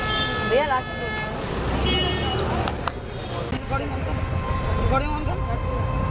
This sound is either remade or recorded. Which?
recorded